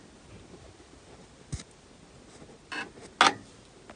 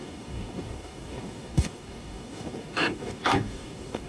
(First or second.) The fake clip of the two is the second